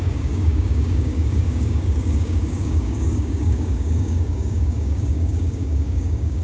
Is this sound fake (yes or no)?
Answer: yes